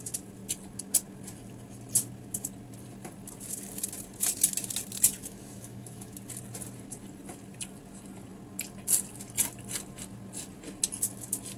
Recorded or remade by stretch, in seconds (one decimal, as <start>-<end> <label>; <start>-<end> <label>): 0.0-5.2 recorded; 5.2-6.1 remade; 6.1-11.6 recorded